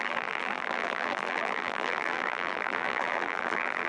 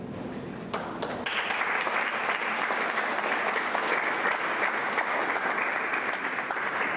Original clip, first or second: second